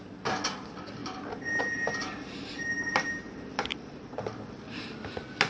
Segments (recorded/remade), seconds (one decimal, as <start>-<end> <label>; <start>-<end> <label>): 0.0-1.0 recorded; 1.0-1.6 remade; 1.6-2.0 recorded; 2.0-4.9 remade; 4.9-5.5 recorded